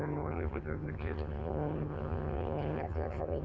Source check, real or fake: fake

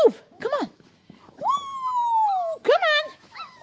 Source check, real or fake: fake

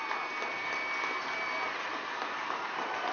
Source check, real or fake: real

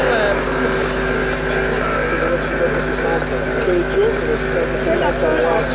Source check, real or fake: real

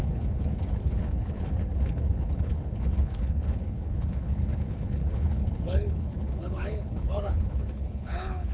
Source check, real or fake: fake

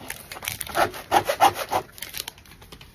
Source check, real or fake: real